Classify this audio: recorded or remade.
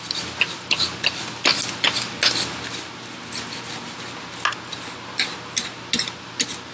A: recorded